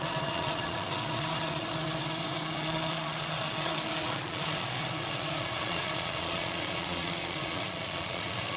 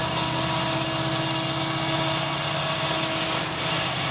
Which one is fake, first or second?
first